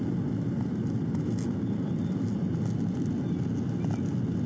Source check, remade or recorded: recorded